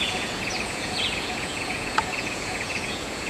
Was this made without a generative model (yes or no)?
no